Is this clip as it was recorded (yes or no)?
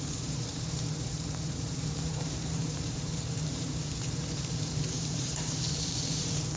no